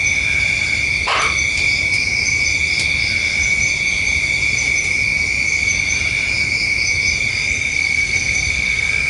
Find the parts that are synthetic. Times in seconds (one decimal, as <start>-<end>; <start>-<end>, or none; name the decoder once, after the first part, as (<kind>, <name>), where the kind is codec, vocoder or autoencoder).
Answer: 7.3-9.1 (codec, SNAC)